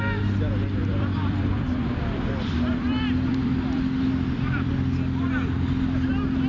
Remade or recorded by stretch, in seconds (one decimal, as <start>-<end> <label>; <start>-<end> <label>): 0.0-0.8 recorded; 0.8-4.7 remade; 4.7-6.5 recorded